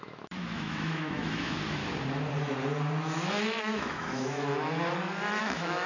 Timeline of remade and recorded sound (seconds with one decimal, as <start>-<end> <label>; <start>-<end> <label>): 0.0-1.8 remade; 1.8-3.6 recorded; 3.6-4.5 remade; 4.5-5.4 recorded; 5.4-5.9 remade